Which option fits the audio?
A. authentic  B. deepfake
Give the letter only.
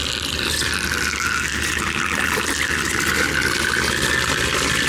A